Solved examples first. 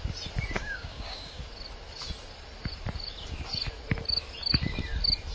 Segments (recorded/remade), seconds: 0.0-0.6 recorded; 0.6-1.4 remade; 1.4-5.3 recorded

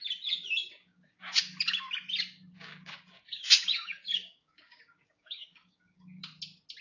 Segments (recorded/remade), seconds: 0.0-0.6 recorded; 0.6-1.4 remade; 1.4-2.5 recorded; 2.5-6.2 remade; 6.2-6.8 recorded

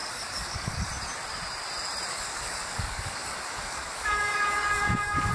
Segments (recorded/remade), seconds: 0.0-0.9 remade; 0.9-2.1 recorded; 2.1-5.3 remade

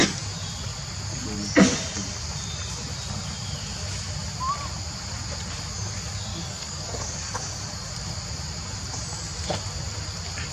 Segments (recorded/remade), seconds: 0.0-6.3 recorded; 6.3-7.9 remade; 7.9-10.5 recorded

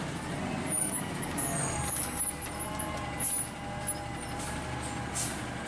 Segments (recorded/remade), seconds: 0.0-0.8 recorded; 0.8-2.2 remade; 2.2-5.7 recorded

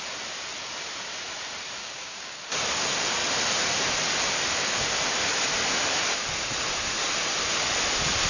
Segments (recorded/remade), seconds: 0.0-1.8 recorded; 1.8-2.4 remade; 2.4-8.3 recorded

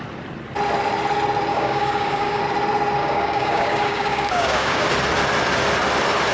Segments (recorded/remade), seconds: 0.0-1.5 recorded; 1.5-2.4 remade; 2.4-3.0 recorded; 3.0-4.9 remade; 4.9-6.3 recorded